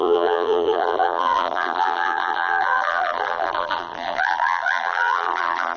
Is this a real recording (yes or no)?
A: no